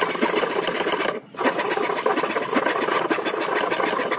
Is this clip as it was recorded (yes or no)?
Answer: yes